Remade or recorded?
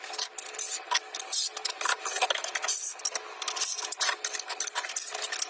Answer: recorded